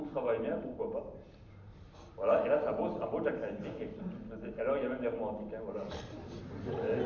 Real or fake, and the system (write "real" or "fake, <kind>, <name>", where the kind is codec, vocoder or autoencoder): real